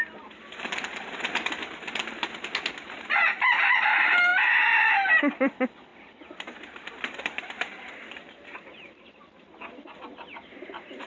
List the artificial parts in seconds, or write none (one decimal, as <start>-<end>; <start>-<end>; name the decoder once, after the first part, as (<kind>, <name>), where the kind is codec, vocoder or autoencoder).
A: 5.9-10.0 (vocoder, BigVGAN v2)